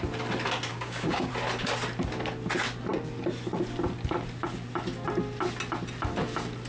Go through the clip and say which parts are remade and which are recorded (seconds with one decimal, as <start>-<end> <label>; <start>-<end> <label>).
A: 0.0-0.7 recorded; 0.7-1.3 remade; 1.3-6.7 recorded